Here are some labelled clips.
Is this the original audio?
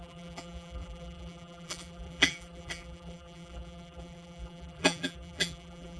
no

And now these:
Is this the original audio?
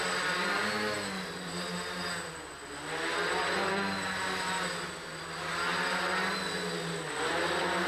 yes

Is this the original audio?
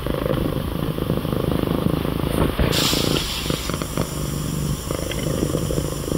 yes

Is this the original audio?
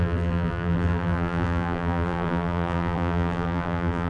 no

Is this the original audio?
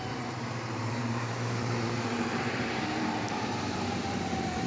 no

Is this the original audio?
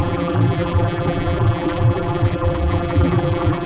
no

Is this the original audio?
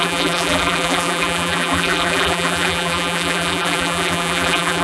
no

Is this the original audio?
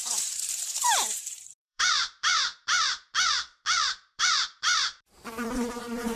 no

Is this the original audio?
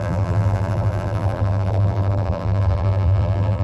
no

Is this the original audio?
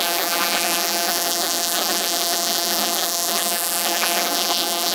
no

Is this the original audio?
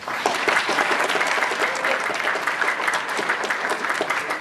no